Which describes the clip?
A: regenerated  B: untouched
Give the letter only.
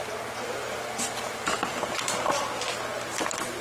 B